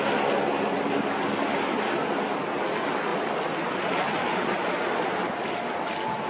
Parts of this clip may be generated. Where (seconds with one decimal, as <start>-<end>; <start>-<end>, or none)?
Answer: none